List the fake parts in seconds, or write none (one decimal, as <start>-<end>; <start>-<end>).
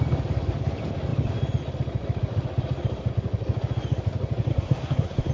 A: 4.5-5.3